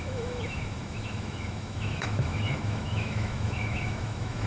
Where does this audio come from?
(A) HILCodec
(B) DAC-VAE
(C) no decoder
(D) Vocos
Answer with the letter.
B